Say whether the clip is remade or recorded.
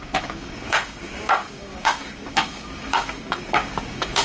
remade